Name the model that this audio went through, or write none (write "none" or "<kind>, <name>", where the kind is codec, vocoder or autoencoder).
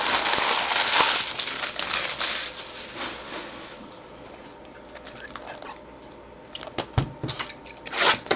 none